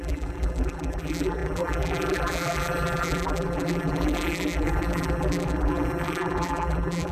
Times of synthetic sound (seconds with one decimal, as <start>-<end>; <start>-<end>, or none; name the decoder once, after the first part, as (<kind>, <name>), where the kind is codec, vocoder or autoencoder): 0.0-7.1 (vocoder, BigVGAN v2)